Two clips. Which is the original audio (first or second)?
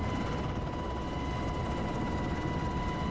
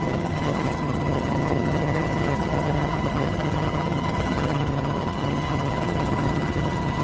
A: first